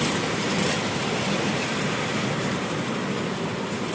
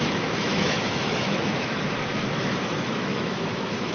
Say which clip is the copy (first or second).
second